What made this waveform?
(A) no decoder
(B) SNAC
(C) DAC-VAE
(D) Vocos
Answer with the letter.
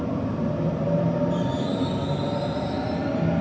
A